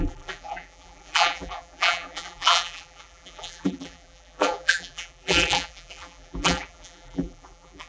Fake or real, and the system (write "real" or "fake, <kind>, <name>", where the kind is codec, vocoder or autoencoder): fake, vocoder, BigVGAN v2